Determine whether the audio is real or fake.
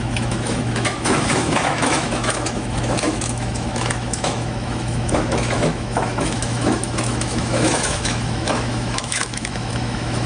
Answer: fake